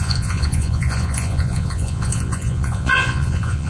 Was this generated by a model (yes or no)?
yes